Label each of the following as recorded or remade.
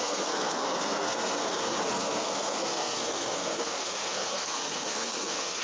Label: remade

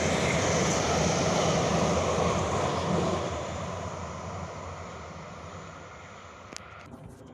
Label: recorded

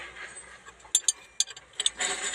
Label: recorded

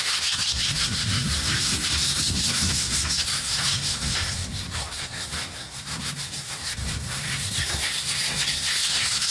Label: remade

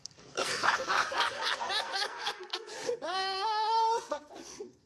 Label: remade